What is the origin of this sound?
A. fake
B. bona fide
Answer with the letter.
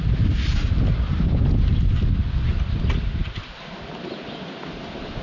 B